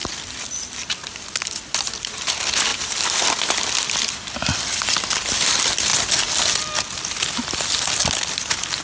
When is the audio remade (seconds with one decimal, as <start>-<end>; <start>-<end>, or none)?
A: none

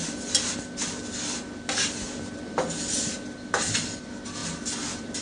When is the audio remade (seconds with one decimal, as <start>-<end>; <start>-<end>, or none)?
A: none

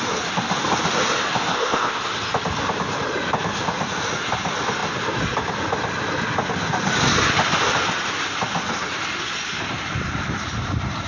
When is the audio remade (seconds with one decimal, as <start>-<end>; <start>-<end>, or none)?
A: 1.5-2.0

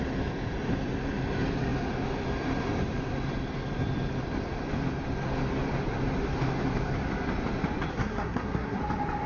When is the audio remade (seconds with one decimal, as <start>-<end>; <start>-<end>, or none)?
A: 7.9-8.8

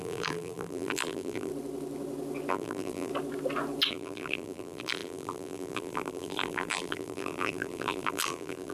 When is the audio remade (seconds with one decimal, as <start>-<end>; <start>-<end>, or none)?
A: 0.0-1.5; 2.5-3.1; 3.9-8.7